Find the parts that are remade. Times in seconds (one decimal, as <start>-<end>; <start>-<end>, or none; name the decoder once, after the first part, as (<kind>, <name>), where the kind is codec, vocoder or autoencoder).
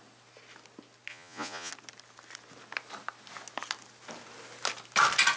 1.1-1.7 (vocoder, Vocos)